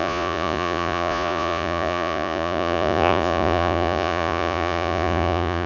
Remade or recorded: remade